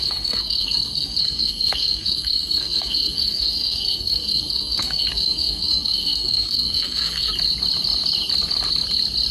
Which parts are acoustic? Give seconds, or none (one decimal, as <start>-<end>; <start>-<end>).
7.3-9.3